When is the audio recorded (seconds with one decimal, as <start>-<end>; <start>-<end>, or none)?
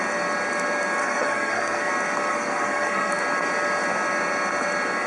0.0-1.0; 1.9-2.3; 3.1-5.1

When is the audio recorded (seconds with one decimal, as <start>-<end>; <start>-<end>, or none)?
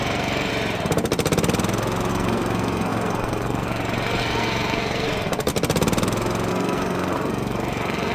0.5-2.1; 5.5-6.5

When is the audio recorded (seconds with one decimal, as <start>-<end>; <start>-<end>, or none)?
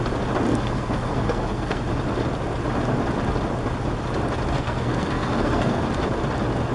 0.0-0.5; 1.8-4.5; 5.8-6.7